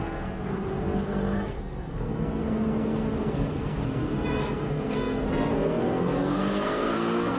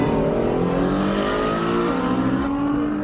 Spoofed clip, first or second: first